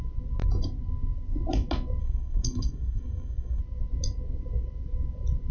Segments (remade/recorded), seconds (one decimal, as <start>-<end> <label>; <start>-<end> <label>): 0.0-2.0 recorded; 2.0-3.6 remade; 3.6-5.5 recorded